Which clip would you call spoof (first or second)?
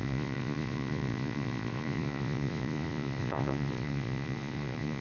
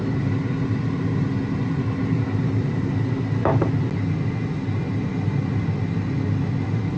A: first